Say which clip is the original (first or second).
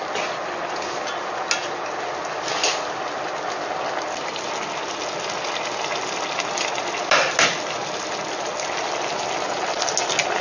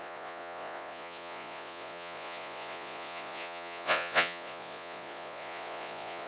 first